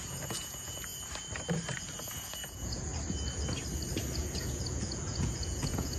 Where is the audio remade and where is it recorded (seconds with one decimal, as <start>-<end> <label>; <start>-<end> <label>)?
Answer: 0.0-0.9 remade; 0.9-2.0 recorded; 2.0-2.9 remade; 2.9-4.2 recorded; 4.2-6.0 remade

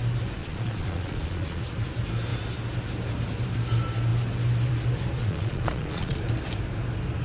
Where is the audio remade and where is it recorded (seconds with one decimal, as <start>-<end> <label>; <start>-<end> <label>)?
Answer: 0.0-0.4 recorded; 0.4-1.6 remade; 1.6-5.2 recorded; 5.2-6.2 remade; 6.2-7.2 recorded

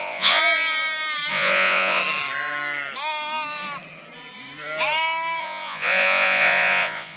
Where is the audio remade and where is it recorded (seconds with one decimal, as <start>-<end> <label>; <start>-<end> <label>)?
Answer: 0.0-0.4 remade; 0.4-1.3 recorded; 1.3-2.0 remade; 2.0-5.4 recorded; 5.4-7.2 remade